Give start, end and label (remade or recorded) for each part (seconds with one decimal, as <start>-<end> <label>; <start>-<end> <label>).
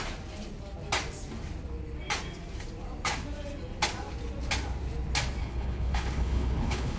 0.0-5.4 recorded; 5.4-7.0 remade